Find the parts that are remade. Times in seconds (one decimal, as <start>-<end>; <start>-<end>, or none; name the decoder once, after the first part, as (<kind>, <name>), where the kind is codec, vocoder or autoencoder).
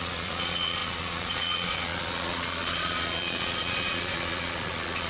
0.0-5.1 (vocoder, Vocos)